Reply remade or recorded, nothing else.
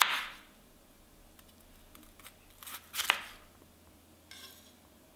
recorded